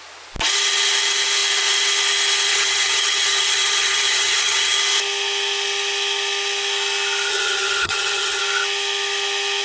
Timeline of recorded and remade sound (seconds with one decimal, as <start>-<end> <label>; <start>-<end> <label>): 0.0-2.5 recorded; 2.5-4.8 remade; 4.8-7.3 recorded; 7.3-8.4 remade; 8.4-9.6 recorded